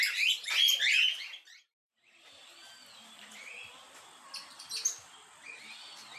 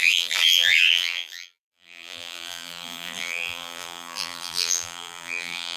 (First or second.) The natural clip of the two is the first